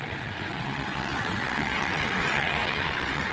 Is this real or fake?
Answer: fake